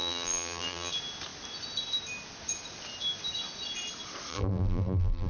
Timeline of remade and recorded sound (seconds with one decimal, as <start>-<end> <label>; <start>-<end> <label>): 0.0-0.9 remade; 0.9-4.3 recorded; 4.3-5.3 remade